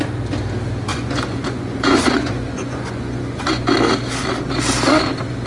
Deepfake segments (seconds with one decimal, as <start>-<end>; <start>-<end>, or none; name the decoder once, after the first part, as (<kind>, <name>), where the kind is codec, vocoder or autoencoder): 0.9-3.6 (vocoder, Vocos)